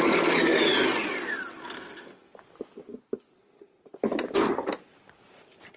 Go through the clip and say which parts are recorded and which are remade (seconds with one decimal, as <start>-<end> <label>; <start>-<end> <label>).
0.0-5.8 recorded